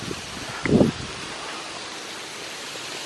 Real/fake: real